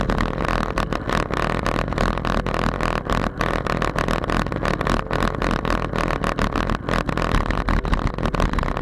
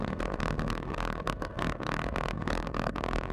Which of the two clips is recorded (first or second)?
first